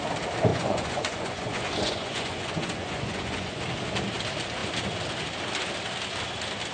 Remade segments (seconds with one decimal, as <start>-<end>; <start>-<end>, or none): 0.5-3.6